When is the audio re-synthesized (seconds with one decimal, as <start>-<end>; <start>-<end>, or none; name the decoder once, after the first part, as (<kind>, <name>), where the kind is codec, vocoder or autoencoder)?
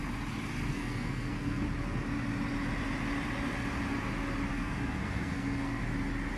0.7-1.6 (codec, SNAC); 4.5-5.8